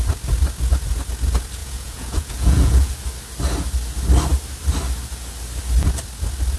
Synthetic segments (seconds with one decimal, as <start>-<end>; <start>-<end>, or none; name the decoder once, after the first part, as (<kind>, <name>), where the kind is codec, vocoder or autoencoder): 1.6-2.9 (vocoder, Vocos)